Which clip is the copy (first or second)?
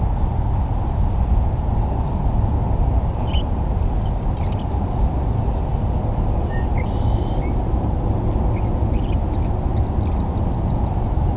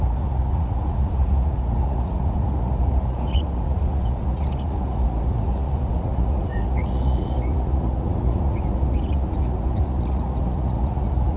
second